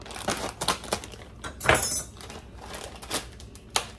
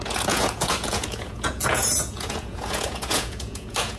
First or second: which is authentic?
first